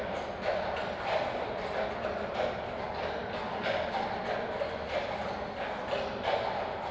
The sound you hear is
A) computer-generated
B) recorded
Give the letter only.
B